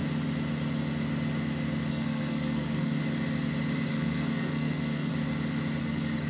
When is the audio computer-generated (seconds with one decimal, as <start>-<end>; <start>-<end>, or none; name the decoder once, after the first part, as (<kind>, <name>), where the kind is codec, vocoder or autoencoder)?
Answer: 1.9-3.0 (codec, SNAC); 3.9-5.1; 5.8-6.3